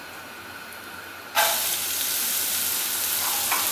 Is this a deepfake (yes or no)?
no